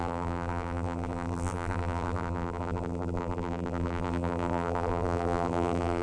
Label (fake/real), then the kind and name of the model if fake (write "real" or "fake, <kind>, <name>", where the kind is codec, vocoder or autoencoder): fake, vocoder, BigVGAN v2